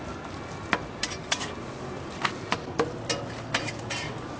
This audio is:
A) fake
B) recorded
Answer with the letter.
B